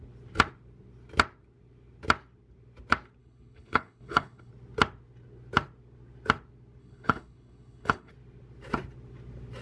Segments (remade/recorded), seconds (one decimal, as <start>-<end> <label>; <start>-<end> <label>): 0.0-3.2 recorded; 3.2-4.5 remade; 4.5-6.8 recorded; 6.8-8.1 remade; 8.1-9.6 recorded

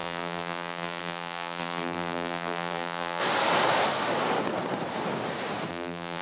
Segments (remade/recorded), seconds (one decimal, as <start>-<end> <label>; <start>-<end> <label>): 0.0-3.2 remade; 3.2-5.7 recorded; 5.7-6.2 remade